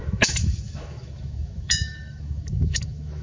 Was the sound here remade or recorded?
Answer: remade